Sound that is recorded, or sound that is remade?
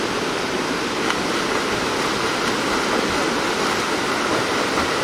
recorded